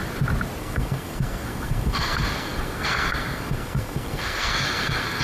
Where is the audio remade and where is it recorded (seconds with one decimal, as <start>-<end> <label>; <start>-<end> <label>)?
0.0-0.6 recorded; 0.6-5.2 remade